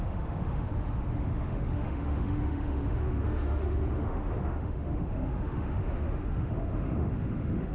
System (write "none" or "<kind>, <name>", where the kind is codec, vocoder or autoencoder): autoencoder, DAC-VAE